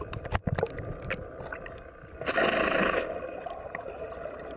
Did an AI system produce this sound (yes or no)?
no